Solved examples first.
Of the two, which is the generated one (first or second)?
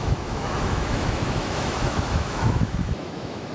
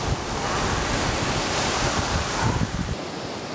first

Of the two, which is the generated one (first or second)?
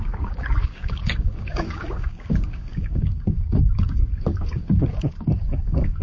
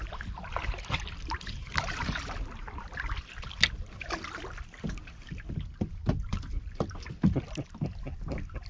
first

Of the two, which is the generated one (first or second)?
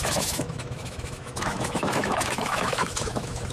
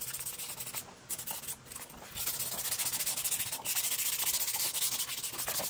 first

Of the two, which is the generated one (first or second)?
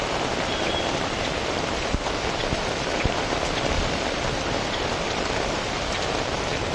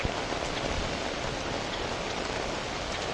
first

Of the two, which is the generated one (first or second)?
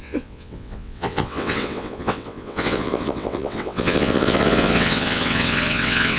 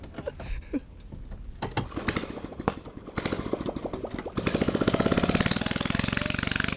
first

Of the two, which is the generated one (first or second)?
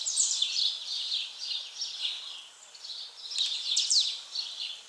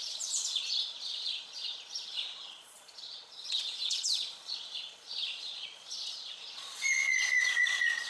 second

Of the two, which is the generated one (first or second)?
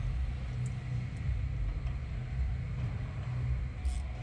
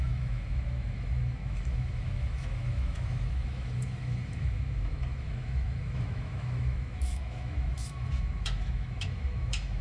second